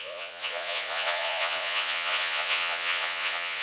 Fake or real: fake